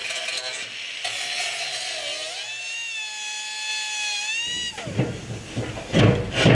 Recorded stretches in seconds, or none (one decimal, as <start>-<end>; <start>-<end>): 0.0-6.5